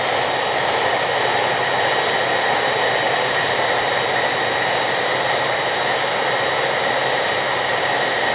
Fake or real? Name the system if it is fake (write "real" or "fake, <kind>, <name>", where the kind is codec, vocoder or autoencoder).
real